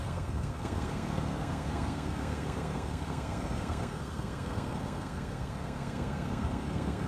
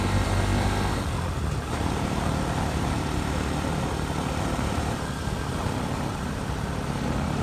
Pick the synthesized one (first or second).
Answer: first